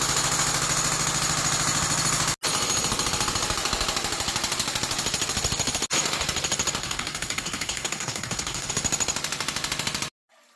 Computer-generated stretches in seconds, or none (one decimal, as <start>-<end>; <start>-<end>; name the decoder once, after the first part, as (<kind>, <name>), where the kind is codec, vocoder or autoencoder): 6.8-8.7 (codec, SNAC)